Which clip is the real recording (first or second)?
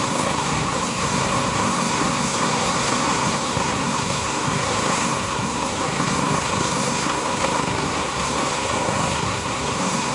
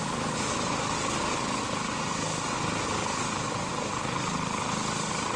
second